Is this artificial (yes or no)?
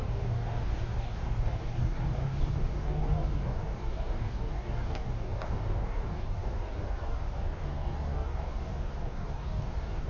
yes